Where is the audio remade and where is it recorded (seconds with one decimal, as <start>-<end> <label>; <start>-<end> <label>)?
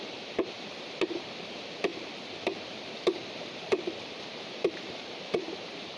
0.0-6.0 remade